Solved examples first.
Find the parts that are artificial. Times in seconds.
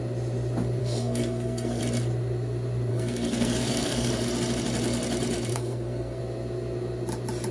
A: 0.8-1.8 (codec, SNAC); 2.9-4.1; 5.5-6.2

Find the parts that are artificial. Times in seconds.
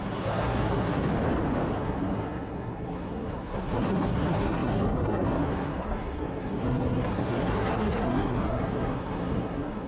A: 0.0-1.0 (codec, SNAC); 1.7-9.9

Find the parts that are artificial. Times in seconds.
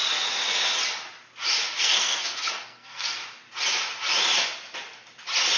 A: 1.8-3.2 (codec, SNAC)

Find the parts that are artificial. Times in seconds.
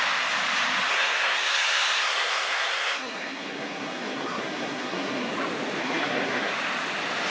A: 0.9-5.3 (codec, SNAC); 5.8-6.5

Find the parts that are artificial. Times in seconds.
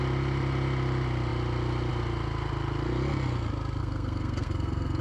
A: 3.8-5.0 (codec, SNAC)